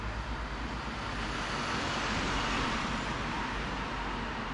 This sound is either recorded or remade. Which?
recorded